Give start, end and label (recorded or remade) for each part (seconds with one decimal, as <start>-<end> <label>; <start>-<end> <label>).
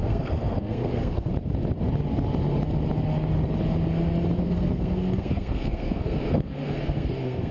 0.0-1.3 remade; 1.3-4.4 recorded; 4.4-7.5 remade